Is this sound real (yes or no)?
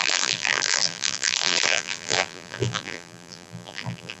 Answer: no